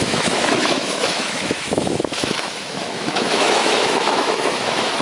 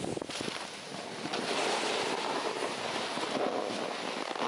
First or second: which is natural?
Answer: second